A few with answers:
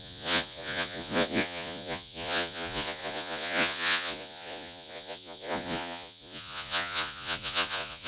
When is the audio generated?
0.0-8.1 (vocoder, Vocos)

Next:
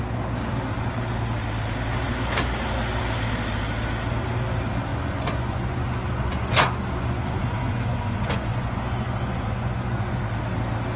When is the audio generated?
4.9-10.2 (vocoder, Vocos)

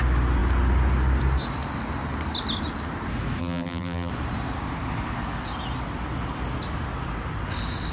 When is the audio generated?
3.4-4.1 (vocoder, BigVGAN v2)

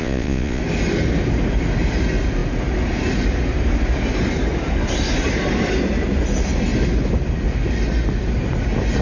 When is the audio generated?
0.0-0.6 (vocoder, Vocos)

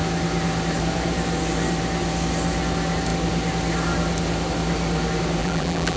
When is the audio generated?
5.4-6.0 (vocoder, BigVGAN v2)

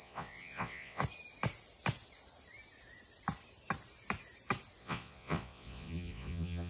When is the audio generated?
0.0-1.0 (vocoder, Vocos); 4.8-6.7

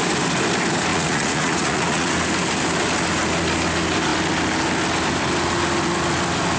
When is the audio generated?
0.9-2.1 (vocoder, Vocos)

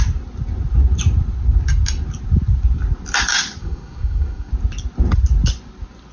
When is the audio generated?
3.6-4.5 (codec, SNAC)